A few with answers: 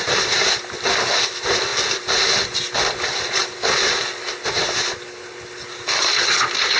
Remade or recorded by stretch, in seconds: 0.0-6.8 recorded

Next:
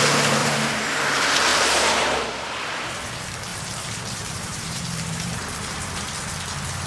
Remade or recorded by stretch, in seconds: 0.0-0.4 recorded; 0.4-1.0 remade; 1.0-1.5 recorded; 1.5-2.6 remade; 2.6-3.5 recorded; 3.5-5.8 remade; 5.8-6.9 recorded

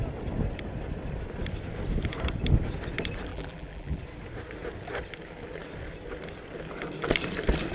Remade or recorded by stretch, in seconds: 0.0-3.3 recorded; 3.3-4.0 remade; 4.0-7.7 recorded

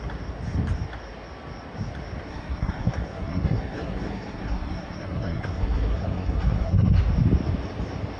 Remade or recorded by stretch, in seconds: 0.0-2.3 recorded; 2.3-6.9 remade; 6.9-8.2 recorded

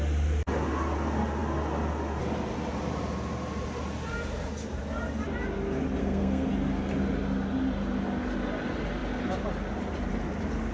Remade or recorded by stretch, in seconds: 0.0-6.0 recorded; 6.0-6.5 remade; 6.5-10.7 recorded

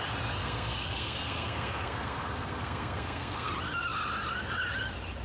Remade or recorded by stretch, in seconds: 0.0-0.4 recorded; 0.4-3.5 remade; 3.5-5.2 recorded